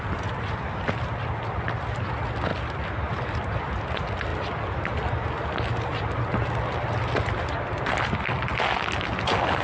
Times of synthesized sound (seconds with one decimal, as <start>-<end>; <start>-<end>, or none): none